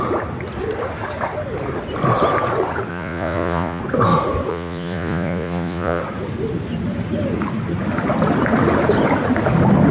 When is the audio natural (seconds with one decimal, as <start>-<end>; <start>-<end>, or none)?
0.0-2.9; 3.8-4.5; 6.0-9.9